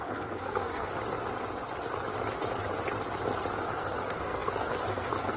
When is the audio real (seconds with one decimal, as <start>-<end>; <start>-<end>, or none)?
0.9-3.6